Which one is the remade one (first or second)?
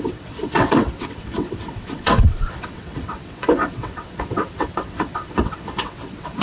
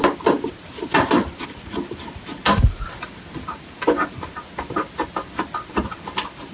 first